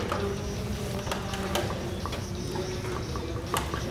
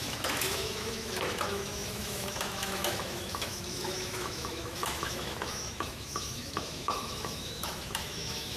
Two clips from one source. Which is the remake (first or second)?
second